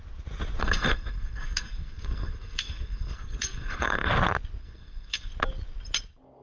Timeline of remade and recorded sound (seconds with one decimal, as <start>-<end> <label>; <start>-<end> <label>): 0.0-0.6 recorded; 0.6-4.1 remade; 4.1-4.6 recorded; 4.6-5.3 remade; 5.3-6.4 recorded